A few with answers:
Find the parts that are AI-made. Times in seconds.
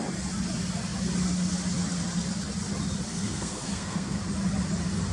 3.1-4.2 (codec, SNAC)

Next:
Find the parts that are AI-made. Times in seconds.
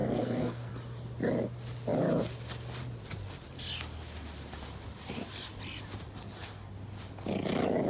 0.0-0.7 (codec, SNAC); 6.2-6.7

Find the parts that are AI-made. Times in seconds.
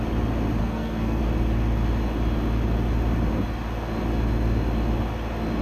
0.6-1.2 (codec, SNAC)